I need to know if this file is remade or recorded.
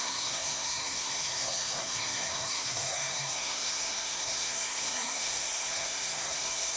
remade